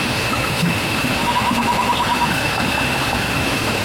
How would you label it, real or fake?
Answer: fake